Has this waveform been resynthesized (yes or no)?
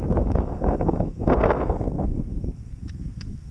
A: yes